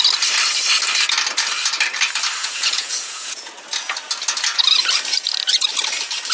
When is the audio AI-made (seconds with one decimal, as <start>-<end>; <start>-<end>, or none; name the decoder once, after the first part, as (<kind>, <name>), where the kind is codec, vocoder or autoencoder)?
2.4-3.5 (vocoder, Vocos)